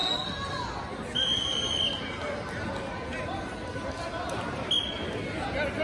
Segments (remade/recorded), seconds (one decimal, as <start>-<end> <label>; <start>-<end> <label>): 0.0-5.8 recorded